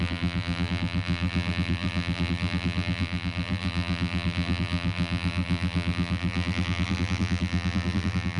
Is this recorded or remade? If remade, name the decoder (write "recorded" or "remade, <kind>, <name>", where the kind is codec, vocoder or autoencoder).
remade, vocoder, BigVGAN v2